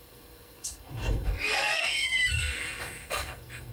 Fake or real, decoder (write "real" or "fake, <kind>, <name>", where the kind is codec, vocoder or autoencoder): fake, codec, SNAC